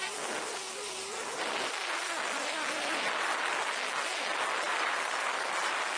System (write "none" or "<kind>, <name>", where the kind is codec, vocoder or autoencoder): none